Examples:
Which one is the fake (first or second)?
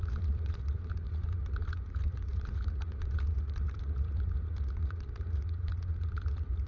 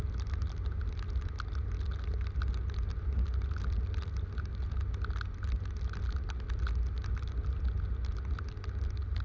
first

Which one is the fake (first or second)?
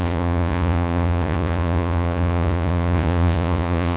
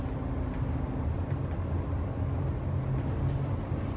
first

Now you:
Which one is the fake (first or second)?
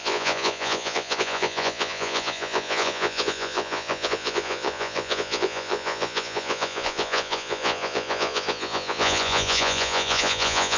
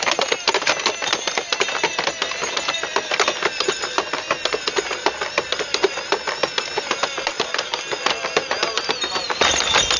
first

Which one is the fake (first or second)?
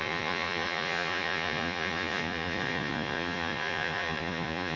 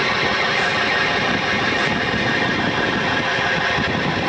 first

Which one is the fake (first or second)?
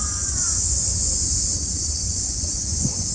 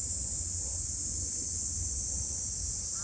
first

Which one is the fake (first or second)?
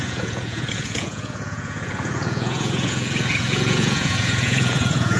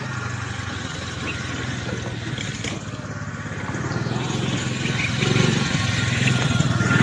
first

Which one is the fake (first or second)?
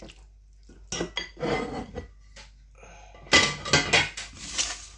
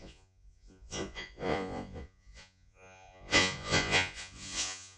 second